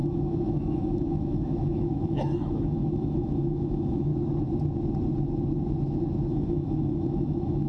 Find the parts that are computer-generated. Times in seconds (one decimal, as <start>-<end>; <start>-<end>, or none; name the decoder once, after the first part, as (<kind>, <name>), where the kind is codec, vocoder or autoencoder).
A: 0.0-4.1 (autoencoder, DAC-VAE); 6.3-7.7